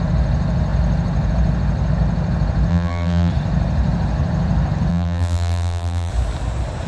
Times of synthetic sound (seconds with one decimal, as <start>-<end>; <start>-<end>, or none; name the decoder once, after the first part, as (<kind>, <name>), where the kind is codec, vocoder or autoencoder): 2.7-3.3 (vocoder, BigVGAN v2); 4.9-6.1